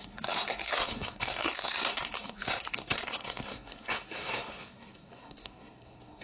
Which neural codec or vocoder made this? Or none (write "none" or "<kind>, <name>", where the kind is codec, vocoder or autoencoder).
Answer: codec, SNAC